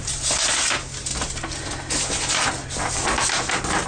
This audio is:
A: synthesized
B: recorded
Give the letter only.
B